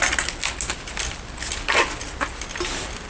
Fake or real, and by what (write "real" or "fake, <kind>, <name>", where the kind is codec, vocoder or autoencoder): real